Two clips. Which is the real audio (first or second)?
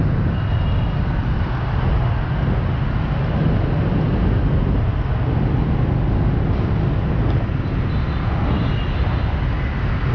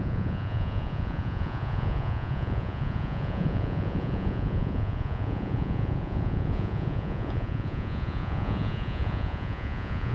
first